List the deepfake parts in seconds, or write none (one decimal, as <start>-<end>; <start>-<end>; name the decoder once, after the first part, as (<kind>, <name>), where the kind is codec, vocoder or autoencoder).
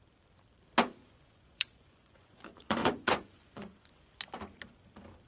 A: 1.0-4.1 (vocoder, Vocos)